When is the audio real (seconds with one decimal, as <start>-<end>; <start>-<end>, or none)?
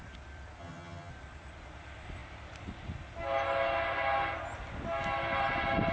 0.0-0.6; 1.1-5.9